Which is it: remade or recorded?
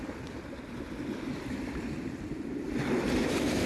recorded